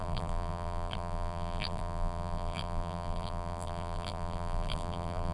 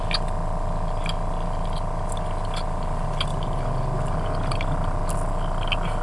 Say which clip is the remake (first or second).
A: first